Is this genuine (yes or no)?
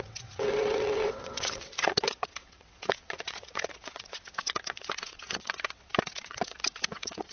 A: no